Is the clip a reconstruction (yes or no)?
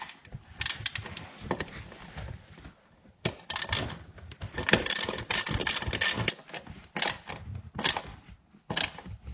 no